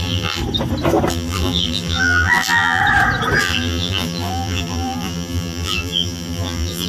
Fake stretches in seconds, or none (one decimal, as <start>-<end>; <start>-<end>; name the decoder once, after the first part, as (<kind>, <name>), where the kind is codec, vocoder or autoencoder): 0.0-0.4 (vocoder, BigVGAN v2); 1.1-2.8; 3.4-6.9